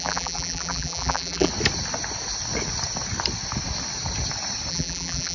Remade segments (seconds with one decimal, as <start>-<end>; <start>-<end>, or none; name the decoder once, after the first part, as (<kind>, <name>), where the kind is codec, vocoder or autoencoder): 0.0-1.5 (vocoder, BigVGAN v2); 4.7-5.3

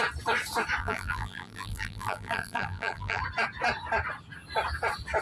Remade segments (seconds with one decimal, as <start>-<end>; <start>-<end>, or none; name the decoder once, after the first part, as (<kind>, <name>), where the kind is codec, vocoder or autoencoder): 0.8-3.2 (vocoder, BigVGAN v2)

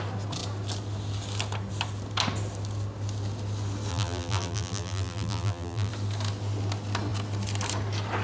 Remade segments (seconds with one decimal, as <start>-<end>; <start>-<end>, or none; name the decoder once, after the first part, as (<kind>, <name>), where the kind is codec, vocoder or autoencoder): 3.9-5.9 (vocoder, BigVGAN v2)

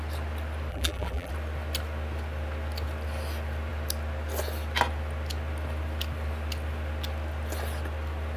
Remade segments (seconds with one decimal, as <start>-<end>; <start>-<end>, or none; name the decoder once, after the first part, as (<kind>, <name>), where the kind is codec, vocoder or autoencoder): 0.7-1.3 (vocoder, BigVGAN v2)

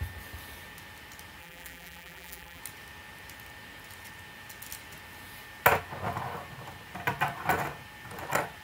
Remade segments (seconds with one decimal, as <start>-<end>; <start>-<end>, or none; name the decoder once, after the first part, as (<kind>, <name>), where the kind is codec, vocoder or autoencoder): 1.4-2.6 (vocoder, BigVGAN v2)